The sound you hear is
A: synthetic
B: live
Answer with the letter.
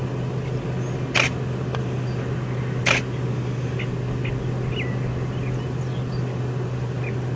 B